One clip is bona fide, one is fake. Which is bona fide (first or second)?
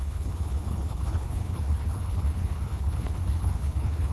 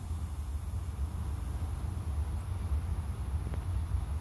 second